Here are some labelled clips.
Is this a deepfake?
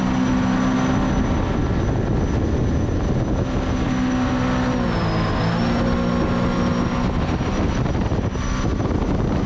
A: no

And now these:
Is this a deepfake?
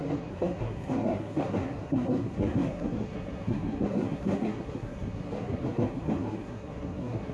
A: yes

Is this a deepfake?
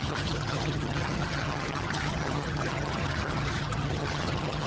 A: yes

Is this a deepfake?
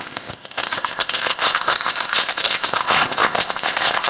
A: yes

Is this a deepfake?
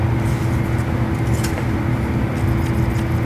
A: no